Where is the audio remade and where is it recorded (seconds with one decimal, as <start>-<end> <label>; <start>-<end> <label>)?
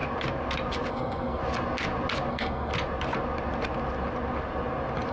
0.0-0.9 recorded; 0.9-1.4 remade; 1.4-2.3 recorded; 2.3-2.7 remade; 2.7-5.1 recorded